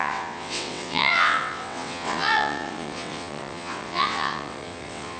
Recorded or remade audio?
remade